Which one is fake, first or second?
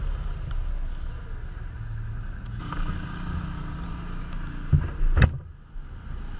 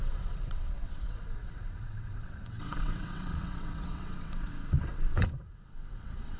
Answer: second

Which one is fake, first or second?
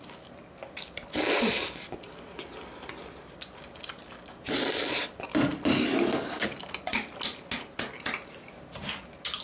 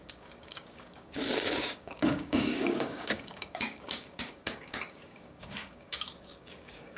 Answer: second